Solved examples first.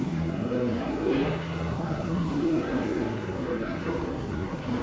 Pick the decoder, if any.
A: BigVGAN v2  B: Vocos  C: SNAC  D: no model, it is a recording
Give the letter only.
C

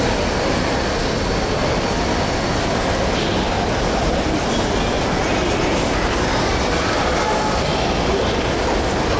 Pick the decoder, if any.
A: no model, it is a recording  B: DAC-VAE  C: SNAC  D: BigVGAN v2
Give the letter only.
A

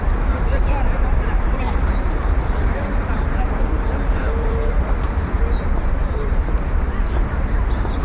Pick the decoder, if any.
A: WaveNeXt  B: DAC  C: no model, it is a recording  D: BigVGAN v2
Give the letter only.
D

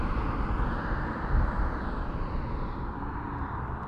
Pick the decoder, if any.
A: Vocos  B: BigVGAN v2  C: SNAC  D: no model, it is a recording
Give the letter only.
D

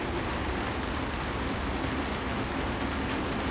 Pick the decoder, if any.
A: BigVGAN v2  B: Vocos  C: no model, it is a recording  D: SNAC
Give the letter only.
C